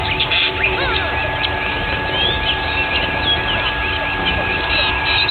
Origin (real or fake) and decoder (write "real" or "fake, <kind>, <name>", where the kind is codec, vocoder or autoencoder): real